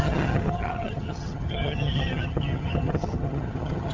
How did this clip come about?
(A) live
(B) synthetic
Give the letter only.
B